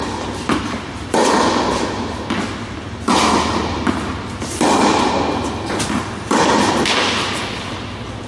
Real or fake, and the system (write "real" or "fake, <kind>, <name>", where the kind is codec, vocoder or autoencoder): real